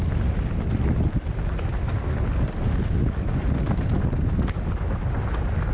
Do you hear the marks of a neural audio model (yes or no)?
no